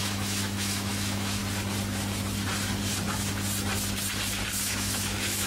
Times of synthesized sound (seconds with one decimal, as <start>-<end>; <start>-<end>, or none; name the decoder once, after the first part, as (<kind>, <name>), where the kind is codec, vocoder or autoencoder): 0.0-1.4 (autoencoder, DAC-VAE); 4.6-5.5

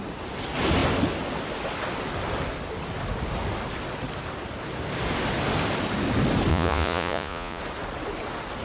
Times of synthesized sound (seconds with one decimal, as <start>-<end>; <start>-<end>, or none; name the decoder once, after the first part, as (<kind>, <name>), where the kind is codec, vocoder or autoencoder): 6.5-7.6 (vocoder, Vocos)

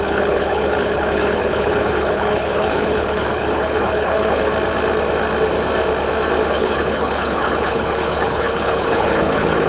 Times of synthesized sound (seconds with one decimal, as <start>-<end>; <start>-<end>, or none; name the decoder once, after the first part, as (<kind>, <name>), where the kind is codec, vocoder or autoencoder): 0.0-4.5 (codec, HILCodec); 6.5-9.7

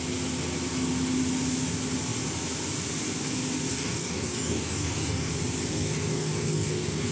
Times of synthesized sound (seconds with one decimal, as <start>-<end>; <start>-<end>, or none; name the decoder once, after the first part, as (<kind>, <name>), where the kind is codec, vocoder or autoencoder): 3.7-5.3 (codec, DAC); 5.7-7.1